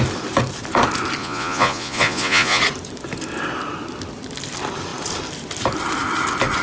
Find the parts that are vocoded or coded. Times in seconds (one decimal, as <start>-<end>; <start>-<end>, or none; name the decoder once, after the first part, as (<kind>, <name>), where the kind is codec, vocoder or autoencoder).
1.2-2.6 (vocoder, Vocos)